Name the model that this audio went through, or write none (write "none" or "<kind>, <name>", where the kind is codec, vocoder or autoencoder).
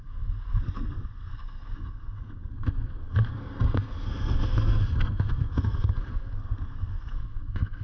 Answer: codec, SNAC